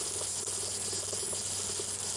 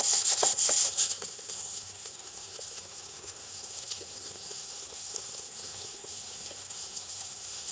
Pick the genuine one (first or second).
first